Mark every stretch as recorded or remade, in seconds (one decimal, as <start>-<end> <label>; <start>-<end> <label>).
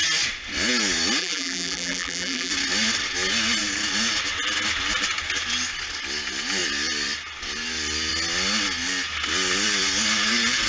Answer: 0.0-1.2 recorded; 1.2-2.5 remade; 2.5-10.7 recorded